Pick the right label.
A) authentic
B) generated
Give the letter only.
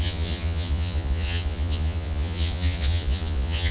B